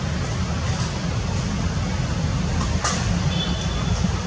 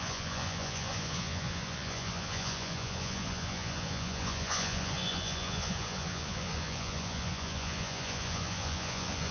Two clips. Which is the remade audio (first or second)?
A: second